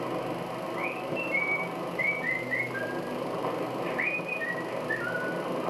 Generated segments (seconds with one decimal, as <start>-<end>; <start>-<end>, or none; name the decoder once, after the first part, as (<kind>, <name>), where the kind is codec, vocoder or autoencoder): 0.8-4.2 (vocoder, BigVGAN v2)